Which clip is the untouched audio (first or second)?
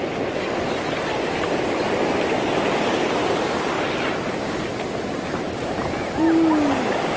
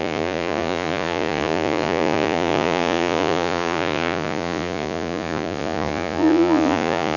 first